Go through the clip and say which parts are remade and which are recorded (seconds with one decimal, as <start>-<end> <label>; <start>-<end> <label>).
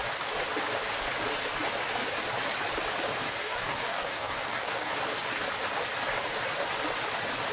0.0-3.4 recorded; 3.4-4.9 remade; 4.9-7.5 recorded